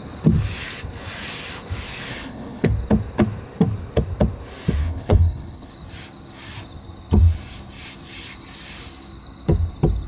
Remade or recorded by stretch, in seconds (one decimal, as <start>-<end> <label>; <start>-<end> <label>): 0.0-2.1 recorded; 2.1-2.7 remade; 2.7-4.8 recorded; 4.8-5.7 remade; 5.7-10.1 recorded

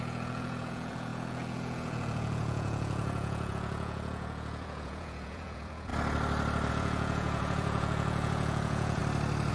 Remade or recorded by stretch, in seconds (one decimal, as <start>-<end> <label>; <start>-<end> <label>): 0.0-5.9 remade; 5.9-6.7 recorded; 6.7-9.0 remade; 9.0-9.5 recorded

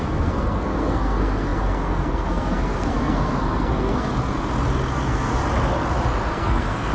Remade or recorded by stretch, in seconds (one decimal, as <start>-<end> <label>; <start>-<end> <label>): 0.0-4.1 remade; 4.1-4.9 recorded; 4.9-5.4 remade; 5.4-6.3 recorded; 6.3-6.9 remade

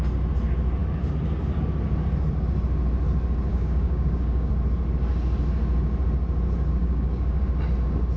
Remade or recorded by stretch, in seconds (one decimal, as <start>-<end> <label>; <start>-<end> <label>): 0.0-3.5 recorded; 3.5-4.5 remade; 4.5-6.8 recorded; 6.8-7.4 remade; 7.4-8.2 recorded

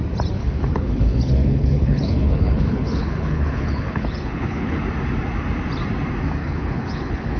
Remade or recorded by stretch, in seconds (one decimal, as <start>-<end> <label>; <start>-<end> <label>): 0.0-0.4 recorded; 0.4-4.8 remade; 4.8-6.4 recorded; 6.4-7.4 remade

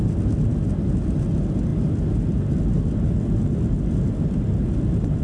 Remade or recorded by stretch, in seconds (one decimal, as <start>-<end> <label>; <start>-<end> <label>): 0.0-5.2 recorded

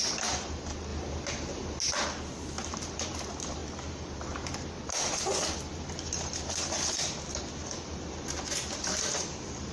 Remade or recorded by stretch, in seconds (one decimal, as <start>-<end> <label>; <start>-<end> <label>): 0.0-9.7 recorded